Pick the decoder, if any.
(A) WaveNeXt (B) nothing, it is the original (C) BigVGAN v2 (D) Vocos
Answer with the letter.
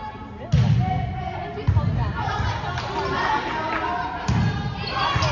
B